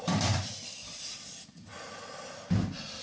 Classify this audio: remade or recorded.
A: recorded